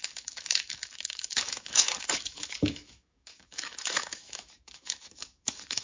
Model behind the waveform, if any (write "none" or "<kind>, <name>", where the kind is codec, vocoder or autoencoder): autoencoder, DAC-VAE